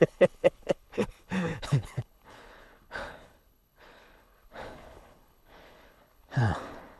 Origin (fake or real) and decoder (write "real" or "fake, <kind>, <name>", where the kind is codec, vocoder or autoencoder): fake, codec, HILCodec